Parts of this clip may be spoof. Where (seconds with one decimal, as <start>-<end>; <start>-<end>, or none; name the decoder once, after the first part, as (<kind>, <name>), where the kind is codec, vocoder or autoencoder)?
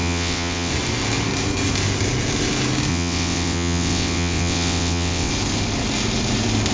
0.0-0.7 (vocoder, WaveNeXt); 2.9-5.3